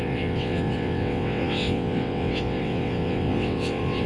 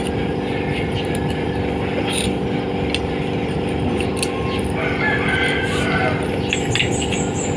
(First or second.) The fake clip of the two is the first